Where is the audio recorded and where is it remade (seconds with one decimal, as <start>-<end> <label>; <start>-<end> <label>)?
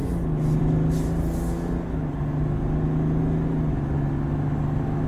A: 0.0-5.1 recorded